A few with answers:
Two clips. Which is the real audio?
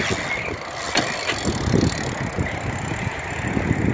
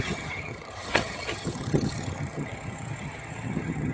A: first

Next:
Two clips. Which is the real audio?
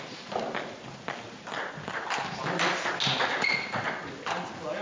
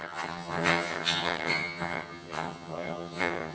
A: first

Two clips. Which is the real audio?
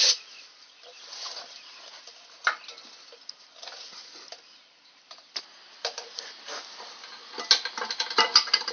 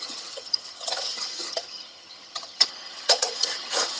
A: first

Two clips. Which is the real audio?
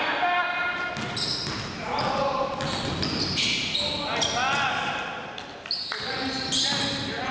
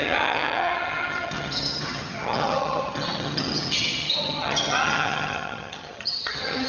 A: first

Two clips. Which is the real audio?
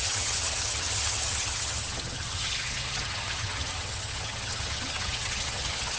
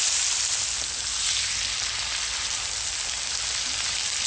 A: second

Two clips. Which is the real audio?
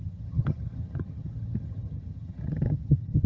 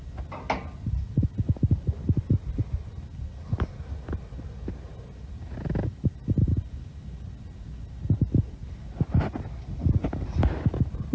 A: second